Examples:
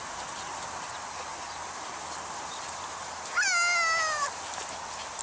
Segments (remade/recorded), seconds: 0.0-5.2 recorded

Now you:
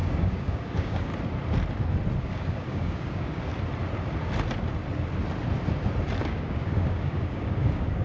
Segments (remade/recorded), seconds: 0.0-1.1 remade; 1.1-2.2 recorded; 2.2-3.5 remade; 3.5-6.2 recorded; 6.2-8.0 remade

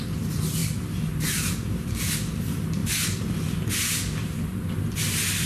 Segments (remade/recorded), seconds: 0.0-5.5 recorded

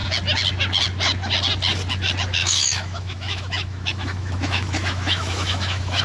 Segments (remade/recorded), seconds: 0.0-2.4 recorded; 2.4-6.0 remade

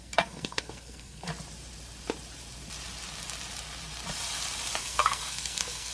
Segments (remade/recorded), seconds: 0.0-1.3 remade; 1.3-4.8 recorded; 4.8-5.9 remade

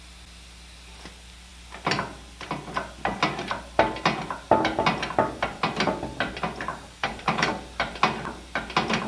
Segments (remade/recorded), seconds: 0.0-6.7 recorded; 6.7-7.5 remade; 7.5-9.1 recorded